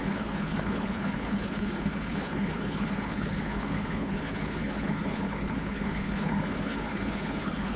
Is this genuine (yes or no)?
no